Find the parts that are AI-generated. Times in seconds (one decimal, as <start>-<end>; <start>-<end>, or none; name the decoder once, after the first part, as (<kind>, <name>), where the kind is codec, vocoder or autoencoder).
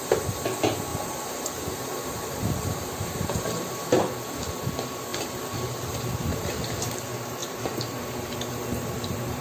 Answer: 0.9-4.0 (vocoder, BigVGAN v2); 5.1-6.9; 7.4-8.0